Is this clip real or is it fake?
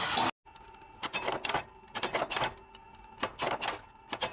real